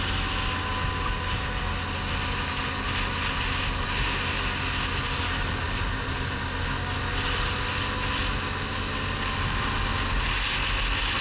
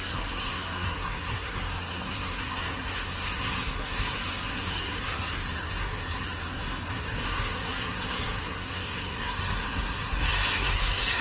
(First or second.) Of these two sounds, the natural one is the first